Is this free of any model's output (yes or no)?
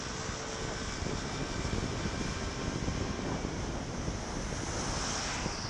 yes